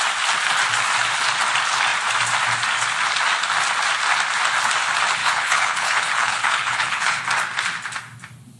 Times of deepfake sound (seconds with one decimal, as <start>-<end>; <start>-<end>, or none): 5.2-7.2